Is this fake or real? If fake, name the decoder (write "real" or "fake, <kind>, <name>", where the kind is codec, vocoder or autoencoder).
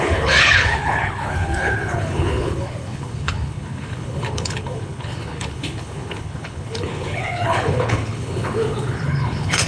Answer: fake, codec, HILCodec